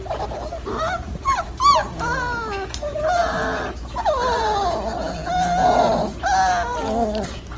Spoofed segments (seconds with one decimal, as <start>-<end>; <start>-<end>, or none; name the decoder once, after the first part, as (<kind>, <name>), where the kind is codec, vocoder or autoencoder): none